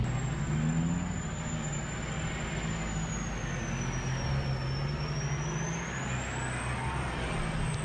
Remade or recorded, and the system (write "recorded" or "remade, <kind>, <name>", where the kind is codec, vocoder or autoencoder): recorded